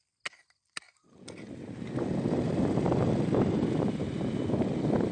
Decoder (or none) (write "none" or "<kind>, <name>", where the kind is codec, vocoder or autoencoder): none